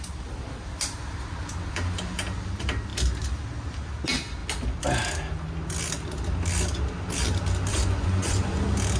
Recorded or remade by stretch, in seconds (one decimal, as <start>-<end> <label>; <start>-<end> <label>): 0.0-7.7 recorded; 7.7-8.6 remade; 8.6-9.0 recorded